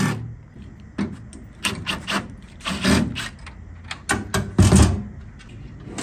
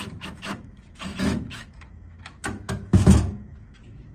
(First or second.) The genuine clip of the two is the first